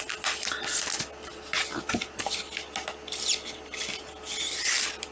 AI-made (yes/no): no